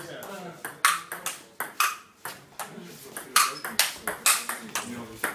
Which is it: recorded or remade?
recorded